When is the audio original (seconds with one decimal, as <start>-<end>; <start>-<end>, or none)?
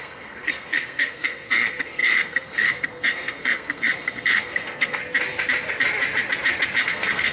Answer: 5.0-6.8